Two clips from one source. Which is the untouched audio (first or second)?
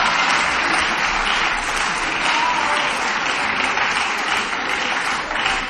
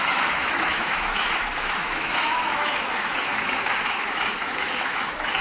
first